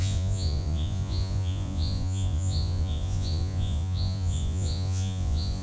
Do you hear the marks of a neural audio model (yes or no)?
yes